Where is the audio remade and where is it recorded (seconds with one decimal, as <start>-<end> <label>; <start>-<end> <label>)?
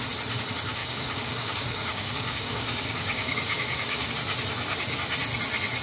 0.0-0.8 recorded; 0.8-4.1 remade; 4.1-5.8 recorded